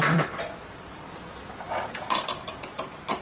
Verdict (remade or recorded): remade